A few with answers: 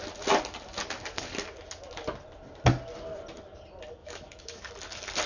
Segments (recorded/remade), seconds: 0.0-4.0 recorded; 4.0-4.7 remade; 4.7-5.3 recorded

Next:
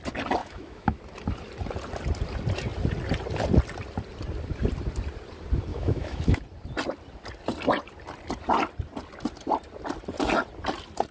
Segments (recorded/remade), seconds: 0.0-0.4 recorded; 0.4-1.0 remade; 1.0-5.7 recorded; 5.7-6.4 remade; 6.4-11.1 recorded

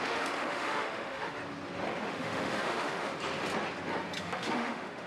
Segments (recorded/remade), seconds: 0.0-1.4 remade; 1.4-2.0 recorded; 2.0-3.1 remade; 3.1-4.2 recorded; 4.2-5.1 remade